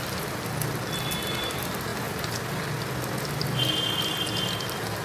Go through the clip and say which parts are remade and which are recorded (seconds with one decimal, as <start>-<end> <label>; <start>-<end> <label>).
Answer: 0.0-5.0 recorded